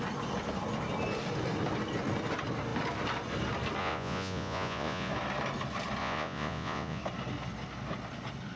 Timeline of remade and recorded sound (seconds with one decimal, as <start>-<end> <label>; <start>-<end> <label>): 0.0-3.8 recorded; 3.8-5.1 remade; 5.1-6.0 recorded; 6.0-7.0 remade; 7.0-8.6 recorded